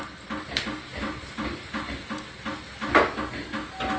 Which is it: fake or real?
real